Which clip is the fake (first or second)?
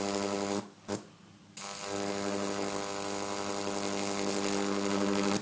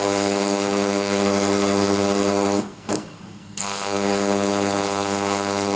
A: second